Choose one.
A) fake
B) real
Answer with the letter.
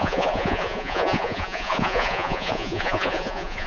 A